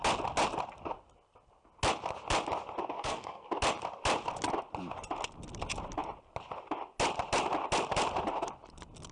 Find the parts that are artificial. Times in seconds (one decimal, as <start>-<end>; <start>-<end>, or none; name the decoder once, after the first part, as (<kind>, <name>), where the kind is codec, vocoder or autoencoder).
2.8-3.5 (codec, SNAC)

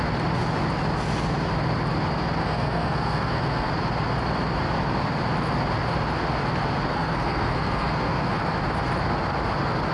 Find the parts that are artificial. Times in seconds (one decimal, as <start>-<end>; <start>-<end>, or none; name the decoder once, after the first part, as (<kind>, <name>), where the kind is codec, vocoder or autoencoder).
2.4-3.7 (codec, SNAC); 6.9-8.4

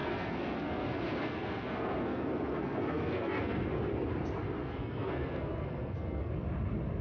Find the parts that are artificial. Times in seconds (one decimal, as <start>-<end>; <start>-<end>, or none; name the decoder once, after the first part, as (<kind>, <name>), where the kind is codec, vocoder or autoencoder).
0.0-3.8 (codec, SNAC); 4.6-6.3

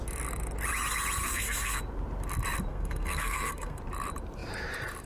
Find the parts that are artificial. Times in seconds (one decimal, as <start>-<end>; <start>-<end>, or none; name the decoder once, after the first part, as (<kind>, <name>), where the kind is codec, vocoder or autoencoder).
1.2-1.8 (codec, SNAC); 2.7-3.8

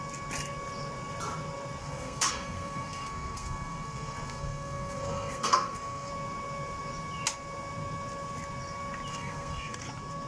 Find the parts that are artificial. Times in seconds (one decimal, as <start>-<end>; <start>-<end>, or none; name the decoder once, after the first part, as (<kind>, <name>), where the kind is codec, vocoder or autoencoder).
1.8-6.1 (codec, SNAC); 9.1-9.8

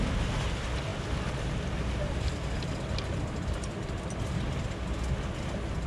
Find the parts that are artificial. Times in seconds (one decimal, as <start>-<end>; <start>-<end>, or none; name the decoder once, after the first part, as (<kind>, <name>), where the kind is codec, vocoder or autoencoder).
none

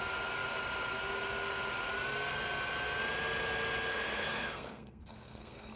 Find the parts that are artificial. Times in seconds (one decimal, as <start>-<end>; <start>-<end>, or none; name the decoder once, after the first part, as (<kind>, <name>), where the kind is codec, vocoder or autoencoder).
3.9-5.8 (codec, SNAC)